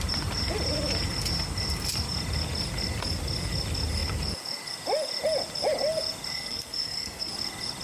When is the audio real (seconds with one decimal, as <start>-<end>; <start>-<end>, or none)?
0.0-6.3; 7.3-7.8